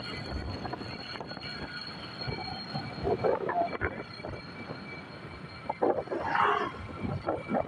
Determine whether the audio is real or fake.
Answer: real